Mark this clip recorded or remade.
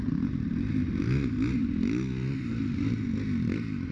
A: recorded